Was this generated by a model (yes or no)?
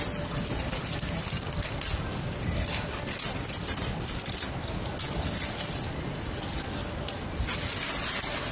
no